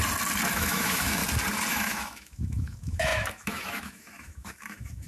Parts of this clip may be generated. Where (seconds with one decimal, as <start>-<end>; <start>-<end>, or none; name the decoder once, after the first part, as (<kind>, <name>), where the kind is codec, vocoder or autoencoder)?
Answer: 0.5-1.2 (autoencoder, DAC-VAE); 1.7-5.1

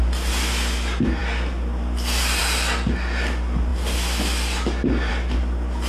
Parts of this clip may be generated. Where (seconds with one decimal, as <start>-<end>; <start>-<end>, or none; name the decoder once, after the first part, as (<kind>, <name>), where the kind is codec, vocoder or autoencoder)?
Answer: none

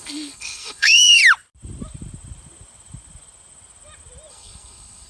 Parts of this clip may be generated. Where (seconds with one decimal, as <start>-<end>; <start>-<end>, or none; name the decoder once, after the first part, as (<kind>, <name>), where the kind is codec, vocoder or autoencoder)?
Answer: 0.0-1.2 (codec, SNAC); 4.3-5.1